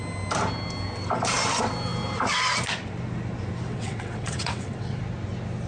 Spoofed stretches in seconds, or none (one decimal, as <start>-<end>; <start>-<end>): 3.7-5.0